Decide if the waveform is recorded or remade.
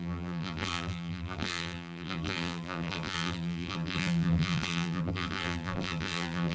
remade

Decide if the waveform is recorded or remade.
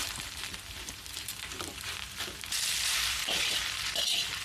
remade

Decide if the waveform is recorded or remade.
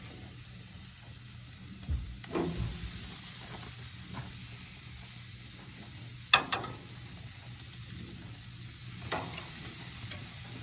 recorded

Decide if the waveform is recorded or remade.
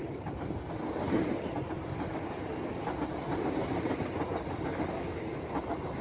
recorded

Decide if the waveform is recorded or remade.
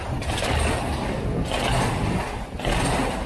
recorded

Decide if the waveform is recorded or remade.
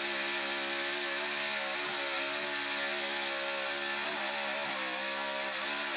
recorded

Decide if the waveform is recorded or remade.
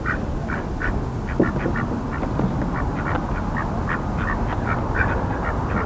recorded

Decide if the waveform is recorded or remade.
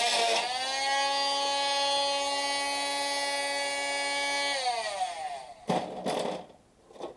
recorded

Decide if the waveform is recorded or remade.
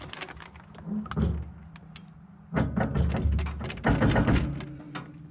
recorded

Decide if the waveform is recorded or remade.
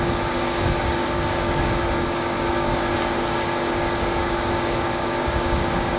remade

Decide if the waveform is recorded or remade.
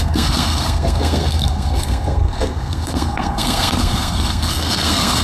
remade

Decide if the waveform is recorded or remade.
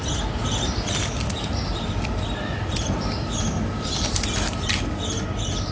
recorded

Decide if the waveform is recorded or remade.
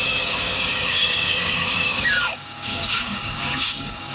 remade